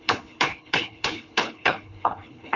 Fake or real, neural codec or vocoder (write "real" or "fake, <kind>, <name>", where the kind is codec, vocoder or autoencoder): fake, codec, HILCodec